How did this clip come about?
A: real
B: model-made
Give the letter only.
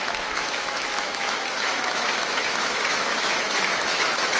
B